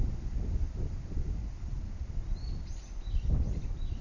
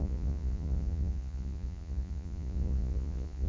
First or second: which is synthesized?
second